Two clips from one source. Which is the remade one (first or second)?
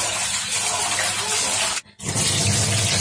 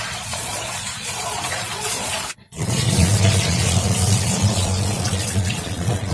second